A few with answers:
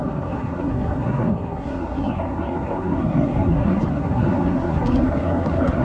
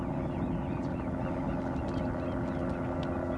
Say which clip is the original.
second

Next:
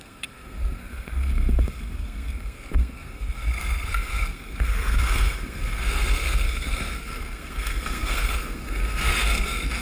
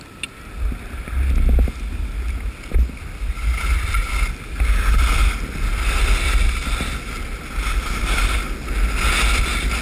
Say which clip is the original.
second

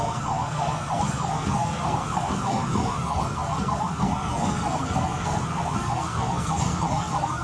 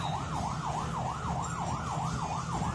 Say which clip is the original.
second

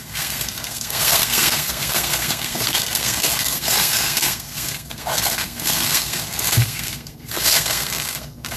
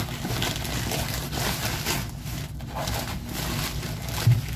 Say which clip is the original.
second